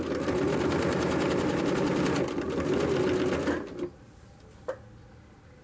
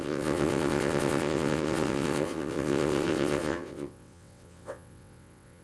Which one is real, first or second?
first